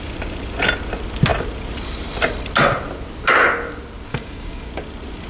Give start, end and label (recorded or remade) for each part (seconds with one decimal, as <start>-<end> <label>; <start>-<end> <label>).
0.0-4.1 recorded; 4.1-4.7 remade; 4.7-5.3 recorded